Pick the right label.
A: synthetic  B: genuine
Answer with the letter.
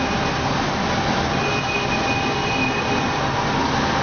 B